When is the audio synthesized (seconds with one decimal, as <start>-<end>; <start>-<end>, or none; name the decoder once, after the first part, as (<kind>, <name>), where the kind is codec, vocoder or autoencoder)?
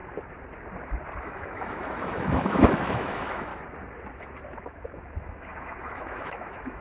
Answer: 1.2-3.5 (autoencoder, DAC-VAE); 4.6-6.8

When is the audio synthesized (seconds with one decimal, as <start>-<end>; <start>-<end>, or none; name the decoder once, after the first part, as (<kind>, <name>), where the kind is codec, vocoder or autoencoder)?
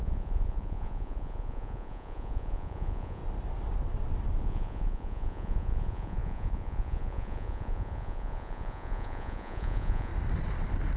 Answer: 0.0-3.2 (vocoder, Vocos); 4.4-10.1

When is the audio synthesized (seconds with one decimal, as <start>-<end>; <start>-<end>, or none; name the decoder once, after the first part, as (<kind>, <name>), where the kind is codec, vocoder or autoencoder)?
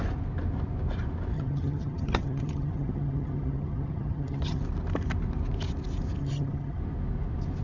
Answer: 1.3-4.6 (vocoder, HiFi-GAN); 6.2-6.8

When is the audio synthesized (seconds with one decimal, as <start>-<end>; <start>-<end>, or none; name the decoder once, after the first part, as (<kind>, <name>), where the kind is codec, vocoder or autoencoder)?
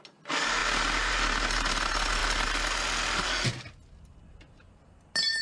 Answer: none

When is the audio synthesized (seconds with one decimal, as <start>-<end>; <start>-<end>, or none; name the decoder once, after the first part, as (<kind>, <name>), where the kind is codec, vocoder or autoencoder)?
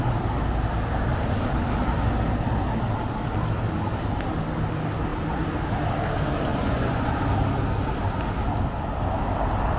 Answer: 6.5-7.2 (vocoder, Vocos)